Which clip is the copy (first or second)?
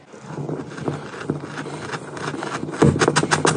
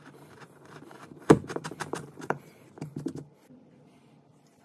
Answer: second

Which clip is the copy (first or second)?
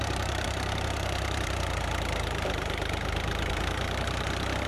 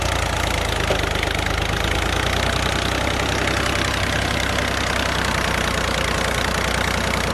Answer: first